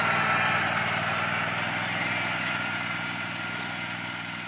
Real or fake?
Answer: real